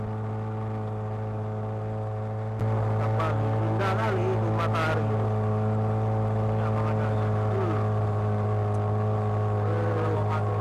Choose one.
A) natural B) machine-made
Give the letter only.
A